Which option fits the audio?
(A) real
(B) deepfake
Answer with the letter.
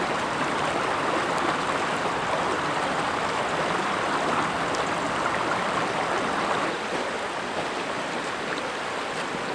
A